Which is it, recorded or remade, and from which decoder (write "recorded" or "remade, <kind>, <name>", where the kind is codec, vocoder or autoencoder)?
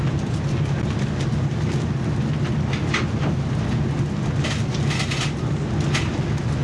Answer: recorded